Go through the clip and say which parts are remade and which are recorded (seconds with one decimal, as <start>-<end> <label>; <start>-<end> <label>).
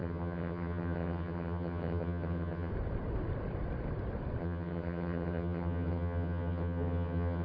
0.0-2.7 remade; 2.7-4.4 recorded; 4.4-7.4 remade